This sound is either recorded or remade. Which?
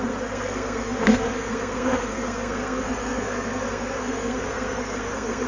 remade